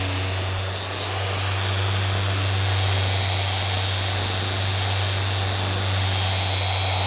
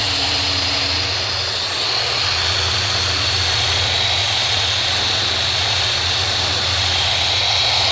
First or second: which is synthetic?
second